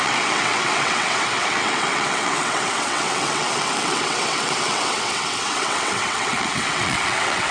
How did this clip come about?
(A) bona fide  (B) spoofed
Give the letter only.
B